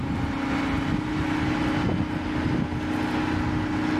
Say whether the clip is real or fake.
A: real